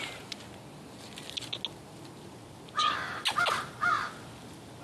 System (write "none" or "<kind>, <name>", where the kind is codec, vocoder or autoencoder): none